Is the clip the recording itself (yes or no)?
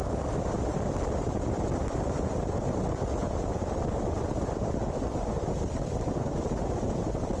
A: yes